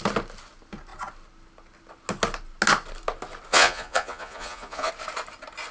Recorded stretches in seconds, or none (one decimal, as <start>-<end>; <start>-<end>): 0.0-3.5; 4.9-5.7